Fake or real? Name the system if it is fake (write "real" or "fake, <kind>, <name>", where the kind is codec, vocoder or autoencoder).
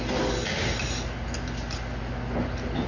real